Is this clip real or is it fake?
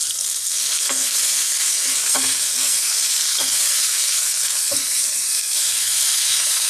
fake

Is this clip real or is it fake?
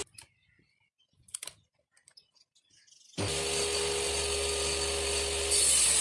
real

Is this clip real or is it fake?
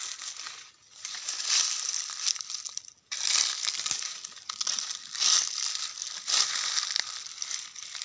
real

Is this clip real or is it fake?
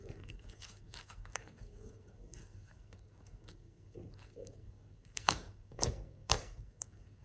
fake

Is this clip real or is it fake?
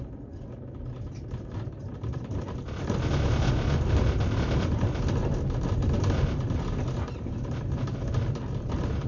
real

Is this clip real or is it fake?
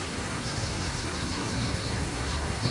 fake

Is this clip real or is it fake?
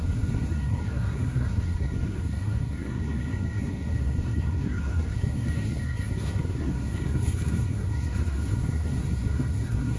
fake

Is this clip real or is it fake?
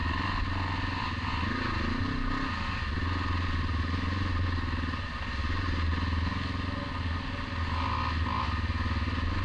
real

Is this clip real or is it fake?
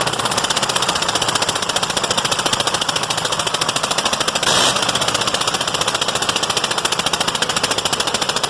real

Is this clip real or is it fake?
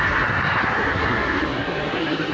fake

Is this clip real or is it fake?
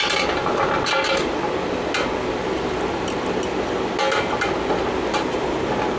real